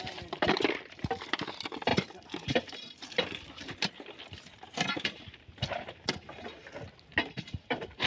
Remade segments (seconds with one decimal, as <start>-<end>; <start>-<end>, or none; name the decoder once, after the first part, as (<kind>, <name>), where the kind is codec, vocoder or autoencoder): 0.0-6.6 (vocoder, BigVGAN v2); 7.3-8.1